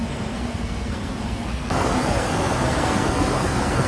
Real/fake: fake